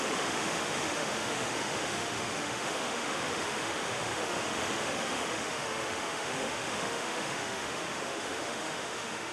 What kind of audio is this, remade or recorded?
remade